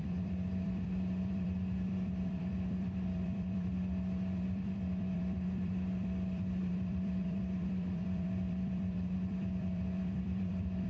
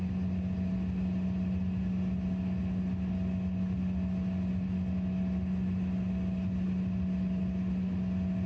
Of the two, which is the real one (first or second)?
second